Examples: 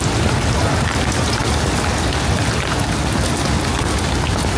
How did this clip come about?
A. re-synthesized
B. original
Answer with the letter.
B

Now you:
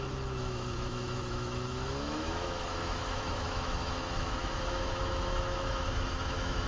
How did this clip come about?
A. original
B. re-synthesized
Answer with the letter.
B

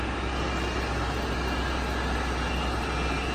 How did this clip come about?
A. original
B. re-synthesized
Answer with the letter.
A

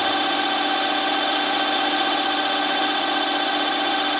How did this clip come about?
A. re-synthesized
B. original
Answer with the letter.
B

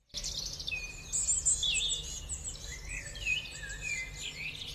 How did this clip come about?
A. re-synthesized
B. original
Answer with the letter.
B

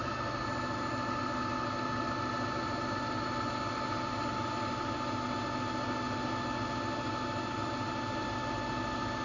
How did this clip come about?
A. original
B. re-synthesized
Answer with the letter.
A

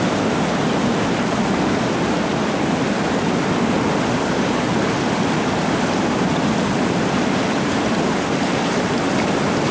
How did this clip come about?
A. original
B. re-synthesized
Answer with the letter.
A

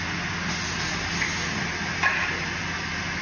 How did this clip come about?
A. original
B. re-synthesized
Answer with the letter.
A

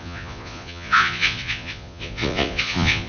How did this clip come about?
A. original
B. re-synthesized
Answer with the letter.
B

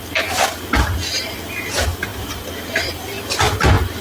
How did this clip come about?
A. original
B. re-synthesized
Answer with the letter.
A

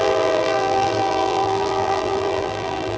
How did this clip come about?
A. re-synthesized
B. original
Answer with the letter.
A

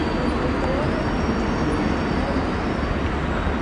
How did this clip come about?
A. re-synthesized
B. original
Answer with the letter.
B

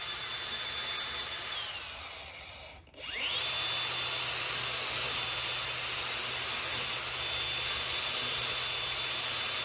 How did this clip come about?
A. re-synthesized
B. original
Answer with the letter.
B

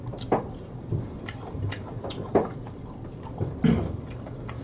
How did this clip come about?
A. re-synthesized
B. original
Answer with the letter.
A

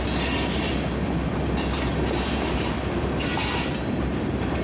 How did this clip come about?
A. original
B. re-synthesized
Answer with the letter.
A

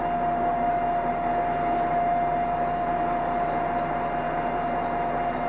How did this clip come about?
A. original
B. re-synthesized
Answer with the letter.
A